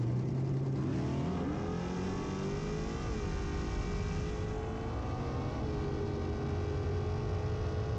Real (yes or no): yes